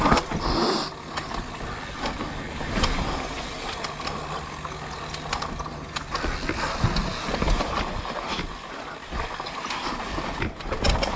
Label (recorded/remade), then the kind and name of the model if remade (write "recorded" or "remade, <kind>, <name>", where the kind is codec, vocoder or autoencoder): recorded